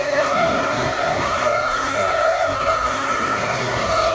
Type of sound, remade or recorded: remade